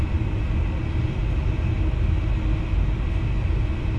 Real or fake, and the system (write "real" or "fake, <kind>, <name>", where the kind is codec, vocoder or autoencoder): real